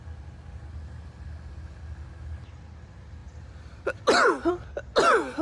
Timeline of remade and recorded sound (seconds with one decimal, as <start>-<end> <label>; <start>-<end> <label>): 0.0-5.4 recorded